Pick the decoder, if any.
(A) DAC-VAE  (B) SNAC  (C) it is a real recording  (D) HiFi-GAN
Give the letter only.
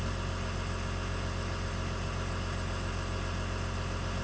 C